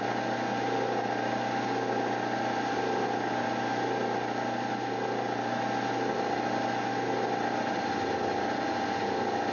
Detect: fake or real real